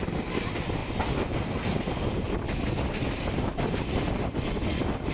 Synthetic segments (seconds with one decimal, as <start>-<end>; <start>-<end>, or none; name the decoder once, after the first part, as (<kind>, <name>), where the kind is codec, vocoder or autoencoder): none